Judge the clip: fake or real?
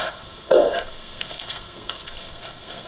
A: fake